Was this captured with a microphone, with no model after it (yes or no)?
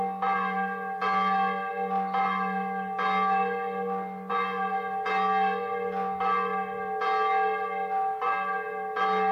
yes